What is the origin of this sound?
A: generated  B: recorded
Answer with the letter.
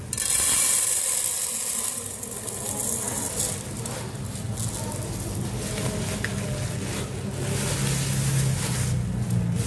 B